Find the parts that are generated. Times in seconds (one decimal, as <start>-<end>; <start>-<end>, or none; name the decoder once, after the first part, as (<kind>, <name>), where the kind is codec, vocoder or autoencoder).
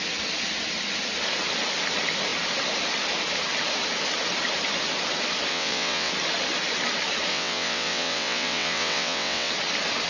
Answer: 5.5-6.1 (vocoder, WaveNeXt); 7.3-9.5